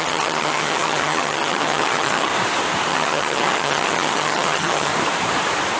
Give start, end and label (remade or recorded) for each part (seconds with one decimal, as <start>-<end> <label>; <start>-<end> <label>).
0.0-2.3 remade; 2.3-2.9 recorded; 2.9-4.9 remade; 4.9-5.8 recorded